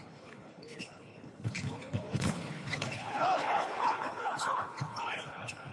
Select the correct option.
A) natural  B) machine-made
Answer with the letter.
B